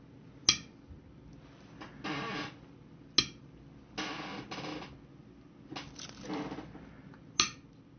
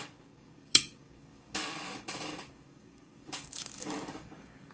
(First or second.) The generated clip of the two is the second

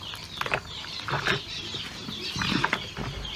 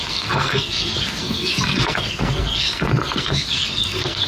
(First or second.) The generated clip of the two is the second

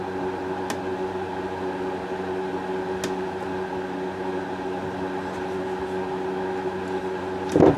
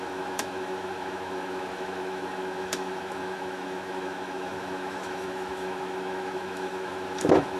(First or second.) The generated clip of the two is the second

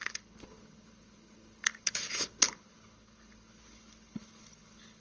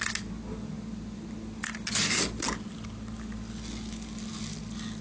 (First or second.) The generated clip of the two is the first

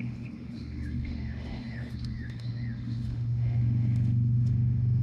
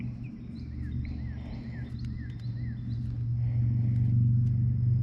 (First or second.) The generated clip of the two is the first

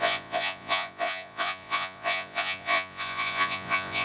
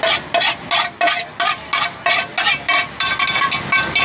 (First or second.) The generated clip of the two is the first